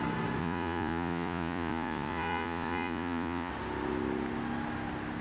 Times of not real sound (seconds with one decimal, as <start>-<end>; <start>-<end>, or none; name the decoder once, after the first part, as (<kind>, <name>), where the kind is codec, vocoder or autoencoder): 0.4-3.5 (vocoder, Vocos)